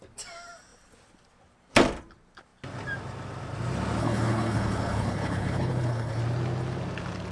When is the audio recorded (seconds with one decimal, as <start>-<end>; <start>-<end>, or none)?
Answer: 0.0-4.0; 6.2-7.3